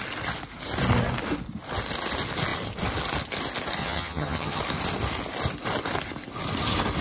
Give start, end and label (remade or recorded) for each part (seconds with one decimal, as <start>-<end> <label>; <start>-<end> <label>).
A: 0.0-3.8 recorded; 3.8-4.6 remade; 4.6-7.0 recorded